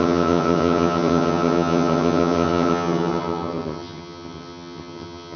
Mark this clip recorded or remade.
remade